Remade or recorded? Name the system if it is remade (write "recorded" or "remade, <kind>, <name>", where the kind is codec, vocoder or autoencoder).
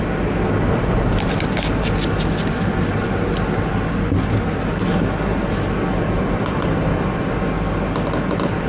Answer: recorded